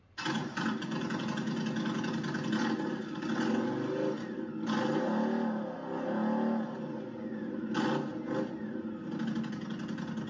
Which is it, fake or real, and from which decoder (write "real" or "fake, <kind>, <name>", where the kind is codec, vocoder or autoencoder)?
real